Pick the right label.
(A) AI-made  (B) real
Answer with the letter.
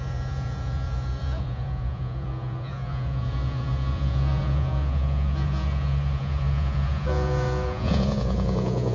A